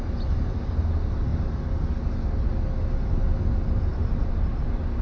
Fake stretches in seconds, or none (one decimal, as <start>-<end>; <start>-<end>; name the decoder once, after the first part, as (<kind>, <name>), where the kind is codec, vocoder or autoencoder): none